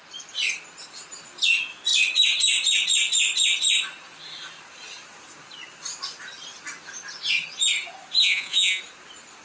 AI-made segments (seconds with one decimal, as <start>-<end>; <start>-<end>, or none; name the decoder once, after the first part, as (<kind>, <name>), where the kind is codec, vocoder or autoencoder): 8.2-8.8 (vocoder, Vocos)